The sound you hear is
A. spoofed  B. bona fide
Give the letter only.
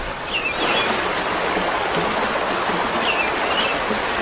B